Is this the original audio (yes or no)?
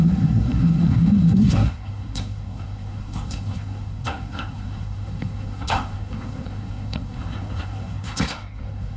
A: no